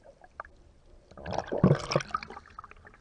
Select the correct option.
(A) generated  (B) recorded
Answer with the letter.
B